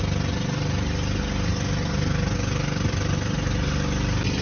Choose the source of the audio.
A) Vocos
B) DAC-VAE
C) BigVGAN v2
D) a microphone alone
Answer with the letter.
D